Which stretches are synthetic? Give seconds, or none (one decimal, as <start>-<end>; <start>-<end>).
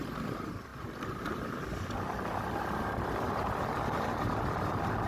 none